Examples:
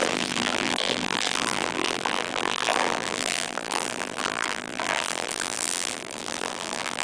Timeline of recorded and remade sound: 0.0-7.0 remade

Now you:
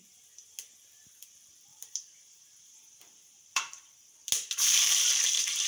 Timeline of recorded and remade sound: 0.0-1.7 recorded; 1.7-3.7 remade; 3.7-4.7 recorded; 4.7-5.7 remade

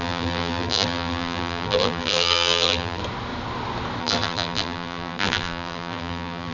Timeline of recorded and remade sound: 0.0-3.0 remade; 3.0-4.0 recorded; 4.0-6.5 remade

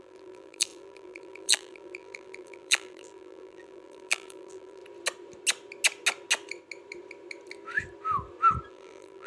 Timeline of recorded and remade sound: 0.0-4.8 remade; 4.8-8.7 recorded; 8.7-9.3 remade

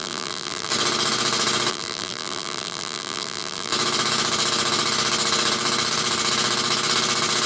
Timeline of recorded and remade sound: 0.0-0.7 remade; 0.7-1.7 recorded; 1.7-3.7 remade; 3.7-7.5 recorded

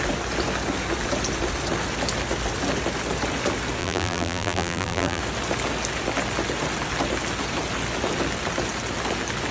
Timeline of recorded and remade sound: 0.0-3.8 recorded; 3.8-5.2 remade; 5.2-9.5 recorded

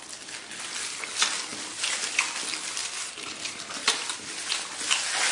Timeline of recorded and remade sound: 0.0-2.8 recorded; 2.8-4.2 remade; 4.2-5.3 recorded